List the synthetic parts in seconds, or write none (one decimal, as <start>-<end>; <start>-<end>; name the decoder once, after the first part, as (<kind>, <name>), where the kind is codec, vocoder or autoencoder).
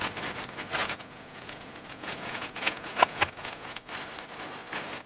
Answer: 0.8-3.9 (vocoder, Vocos)